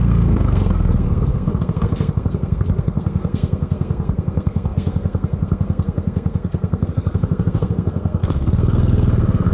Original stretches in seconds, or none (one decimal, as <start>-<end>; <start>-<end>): none